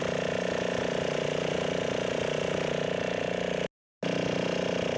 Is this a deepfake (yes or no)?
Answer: no